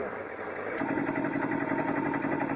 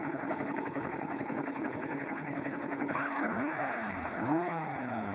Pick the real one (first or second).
first